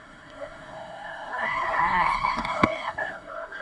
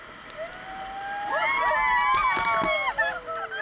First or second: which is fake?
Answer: first